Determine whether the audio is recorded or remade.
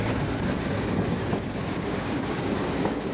remade